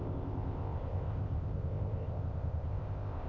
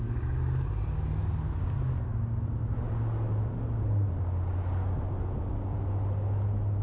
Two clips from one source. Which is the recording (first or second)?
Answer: second